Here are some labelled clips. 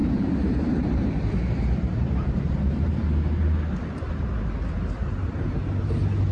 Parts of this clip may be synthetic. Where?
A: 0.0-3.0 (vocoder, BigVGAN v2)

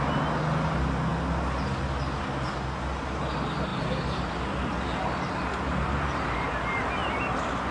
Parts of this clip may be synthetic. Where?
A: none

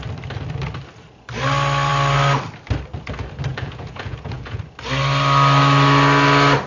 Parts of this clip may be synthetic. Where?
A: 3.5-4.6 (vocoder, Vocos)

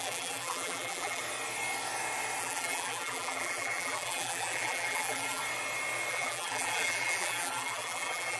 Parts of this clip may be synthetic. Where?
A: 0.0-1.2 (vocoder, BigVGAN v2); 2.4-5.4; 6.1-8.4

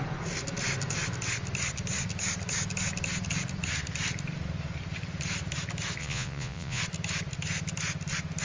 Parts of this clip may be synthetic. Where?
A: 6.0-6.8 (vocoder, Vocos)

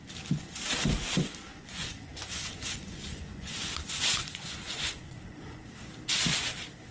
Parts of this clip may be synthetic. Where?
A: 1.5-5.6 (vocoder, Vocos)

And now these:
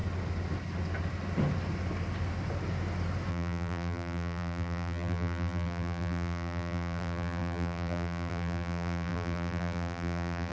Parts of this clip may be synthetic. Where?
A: 3.3-10.5 (vocoder, BigVGAN v2)